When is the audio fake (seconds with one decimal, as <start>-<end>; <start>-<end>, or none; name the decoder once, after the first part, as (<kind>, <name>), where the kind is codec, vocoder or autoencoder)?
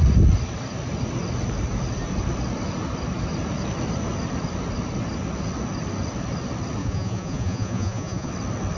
6.8-8.3 (vocoder, Vocos)